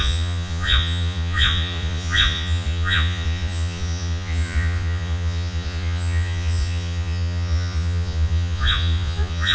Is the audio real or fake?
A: fake